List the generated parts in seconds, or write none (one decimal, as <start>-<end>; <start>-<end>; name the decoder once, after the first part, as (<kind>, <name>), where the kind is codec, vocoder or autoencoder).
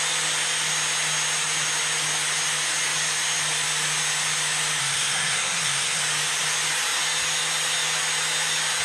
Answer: 4.8-6.0 (codec, SNAC)